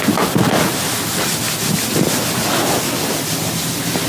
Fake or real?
real